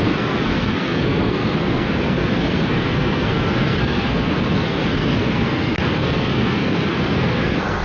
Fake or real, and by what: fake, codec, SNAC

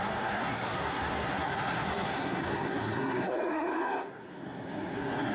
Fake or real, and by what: fake, codec, SNAC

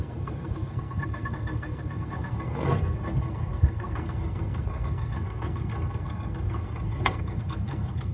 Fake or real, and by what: fake, codec, SNAC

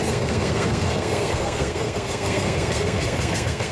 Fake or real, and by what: fake, codec, SNAC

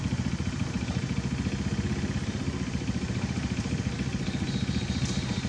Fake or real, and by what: real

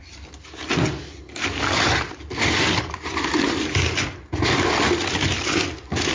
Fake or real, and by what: real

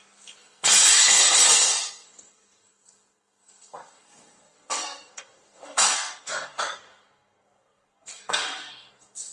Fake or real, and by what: fake, codec, SNAC